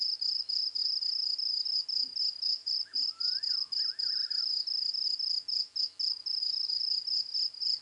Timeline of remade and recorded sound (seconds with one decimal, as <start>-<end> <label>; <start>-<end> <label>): 0.0-7.8 recorded